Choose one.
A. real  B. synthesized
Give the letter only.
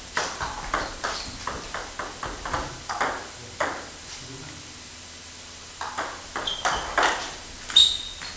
A